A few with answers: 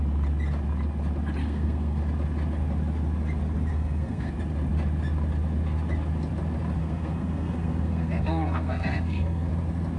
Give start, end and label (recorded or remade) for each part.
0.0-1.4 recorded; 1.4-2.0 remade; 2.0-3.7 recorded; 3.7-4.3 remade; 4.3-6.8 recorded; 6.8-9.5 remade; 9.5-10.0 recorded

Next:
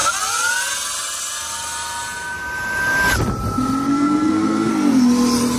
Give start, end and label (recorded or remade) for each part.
0.0-3.9 recorded; 3.9-4.7 remade; 4.7-5.6 recorded

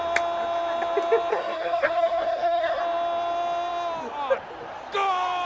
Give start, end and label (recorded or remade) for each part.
0.0-1.3 recorded; 1.3-2.8 remade; 2.8-5.4 recorded